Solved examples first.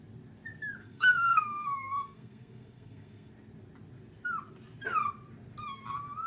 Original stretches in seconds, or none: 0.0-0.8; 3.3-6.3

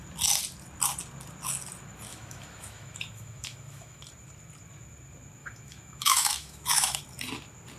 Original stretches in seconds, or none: 0.0-2.1; 4.0-5.4; 7.0-7.8

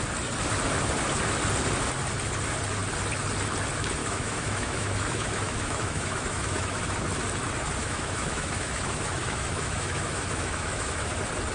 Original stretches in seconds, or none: 0.0-4.0; 6.8-7.8; 11.1-11.5

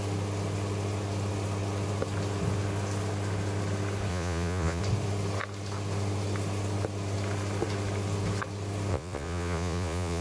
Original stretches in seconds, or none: 0.0-4.1; 4.8-8.9